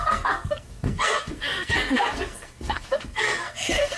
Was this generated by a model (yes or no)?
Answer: yes